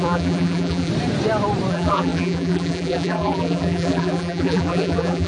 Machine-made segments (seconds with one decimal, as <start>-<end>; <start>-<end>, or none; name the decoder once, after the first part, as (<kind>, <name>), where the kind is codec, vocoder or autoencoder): 0.0-0.9 (vocoder, BigVGAN v2); 1.7-5.3